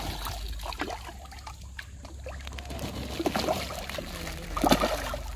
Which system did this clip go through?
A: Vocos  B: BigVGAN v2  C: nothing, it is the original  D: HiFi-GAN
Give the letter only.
C